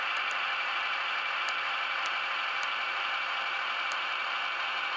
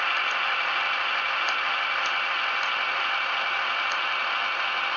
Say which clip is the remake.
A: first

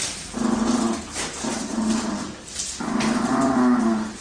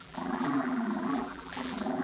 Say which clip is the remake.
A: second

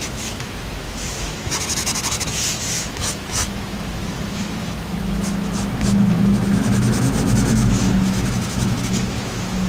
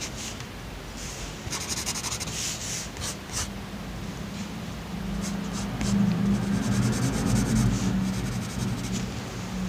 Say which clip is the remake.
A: first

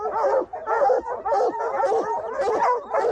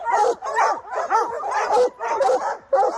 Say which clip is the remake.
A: second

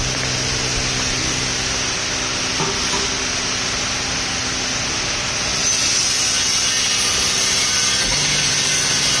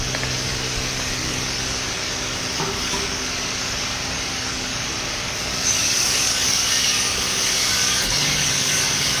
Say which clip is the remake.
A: second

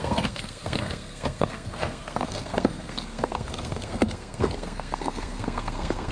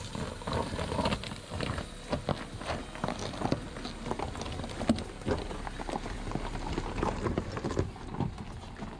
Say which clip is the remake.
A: first